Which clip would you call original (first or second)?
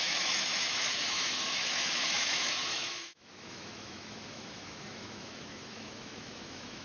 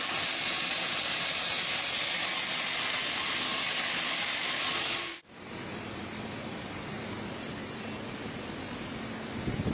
second